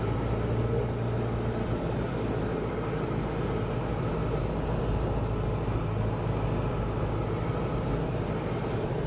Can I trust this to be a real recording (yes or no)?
yes